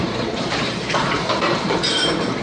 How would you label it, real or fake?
fake